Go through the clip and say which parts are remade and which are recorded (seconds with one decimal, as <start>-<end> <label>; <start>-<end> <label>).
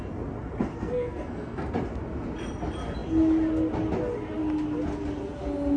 0.0-0.7 recorded; 0.7-1.7 remade; 1.7-5.8 recorded